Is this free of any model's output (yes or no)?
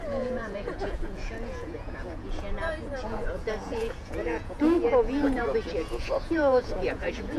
no